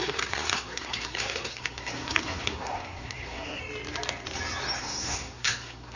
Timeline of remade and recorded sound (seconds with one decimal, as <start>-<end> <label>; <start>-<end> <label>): 0.0-3.6 remade; 3.6-4.8 recorded; 4.8-6.0 remade